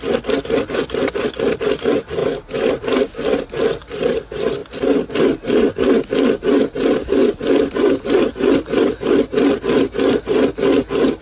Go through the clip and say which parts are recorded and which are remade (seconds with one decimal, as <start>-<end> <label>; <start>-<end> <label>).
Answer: 0.0-11.2 recorded